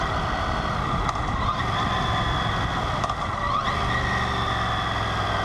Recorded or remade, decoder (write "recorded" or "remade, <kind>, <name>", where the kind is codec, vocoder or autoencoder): recorded